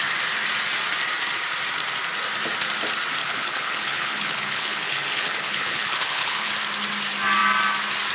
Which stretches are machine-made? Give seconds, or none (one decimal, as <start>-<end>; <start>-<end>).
3.2-6.5